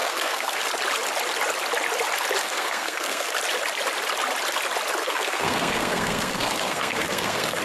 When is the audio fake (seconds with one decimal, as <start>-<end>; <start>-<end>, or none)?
0.0-0.6; 2.4-3.3; 5.0-7.6